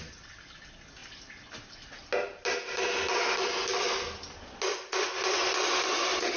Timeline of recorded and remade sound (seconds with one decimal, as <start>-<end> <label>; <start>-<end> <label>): 0.0-6.4 recorded